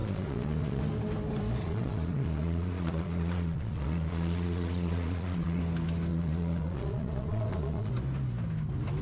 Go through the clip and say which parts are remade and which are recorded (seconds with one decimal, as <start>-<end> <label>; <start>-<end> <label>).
0.0-0.8 remade; 0.8-1.6 recorded; 1.6-5.6 remade; 5.6-6.1 recorded; 6.1-7.9 remade; 7.9-9.0 recorded

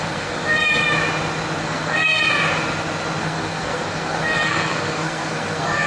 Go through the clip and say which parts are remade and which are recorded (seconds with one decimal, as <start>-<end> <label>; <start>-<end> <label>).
0.0-0.8 remade; 0.8-1.6 recorded; 1.6-2.3 remade; 2.3-3.2 recorded; 3.2-5.9 remade